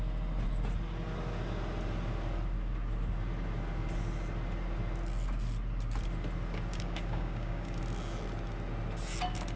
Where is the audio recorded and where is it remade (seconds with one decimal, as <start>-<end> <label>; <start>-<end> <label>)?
0.0-6.7 recorded; 6.7-7.8 remade; 7.8-9.6 recorded